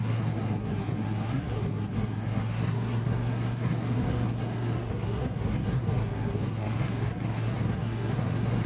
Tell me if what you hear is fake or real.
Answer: fake